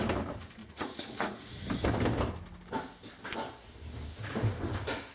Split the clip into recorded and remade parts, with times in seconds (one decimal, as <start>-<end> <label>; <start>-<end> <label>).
0.0-0.6 recorded; 0.6-1.5 remade; 1.5-5.1 recorded